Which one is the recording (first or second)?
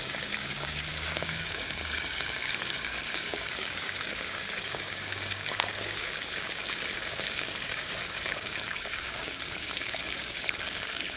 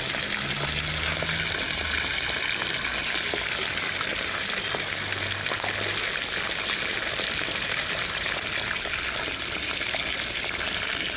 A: second